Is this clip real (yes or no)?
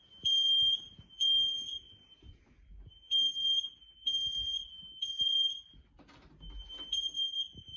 no